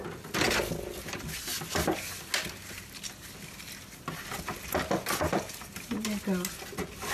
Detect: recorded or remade recorded